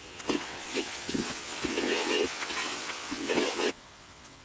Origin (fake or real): fake